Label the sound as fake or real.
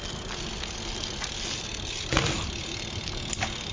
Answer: real